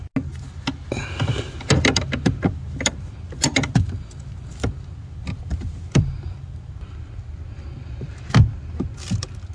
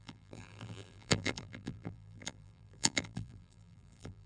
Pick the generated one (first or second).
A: second